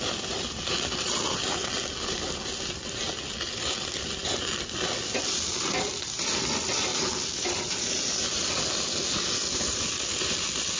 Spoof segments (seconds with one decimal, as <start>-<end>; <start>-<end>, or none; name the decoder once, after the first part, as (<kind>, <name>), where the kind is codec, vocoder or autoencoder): none